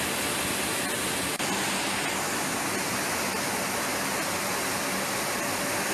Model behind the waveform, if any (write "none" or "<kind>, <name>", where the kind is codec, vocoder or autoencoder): none